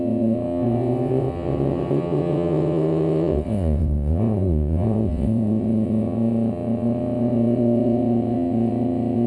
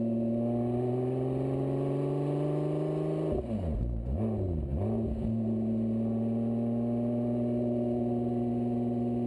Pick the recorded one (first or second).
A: second